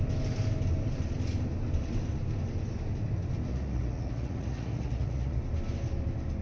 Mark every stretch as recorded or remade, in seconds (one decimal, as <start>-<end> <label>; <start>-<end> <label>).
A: 0.0-3.5 recorded; 3.5-5.4 remade; 5.4-6.4 recorded